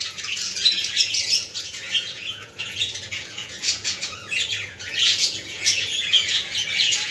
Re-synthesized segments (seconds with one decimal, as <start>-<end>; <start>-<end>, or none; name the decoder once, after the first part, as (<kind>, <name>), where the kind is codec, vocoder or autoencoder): 0.0-7.1 (vocoder, Vocos)